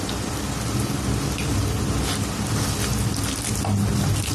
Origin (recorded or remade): recorded